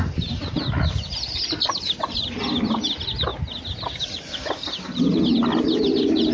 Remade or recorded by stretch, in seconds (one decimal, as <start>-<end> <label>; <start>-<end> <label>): 0.0-6.3 recorded